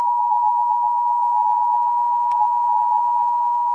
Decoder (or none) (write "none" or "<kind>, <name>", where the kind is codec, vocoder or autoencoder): codec, SNAC